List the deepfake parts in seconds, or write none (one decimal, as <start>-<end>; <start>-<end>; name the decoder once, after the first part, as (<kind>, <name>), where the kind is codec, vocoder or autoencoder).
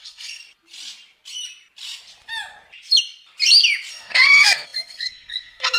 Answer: 0.0-0.4 (codec, SNAC); 3.9-5.8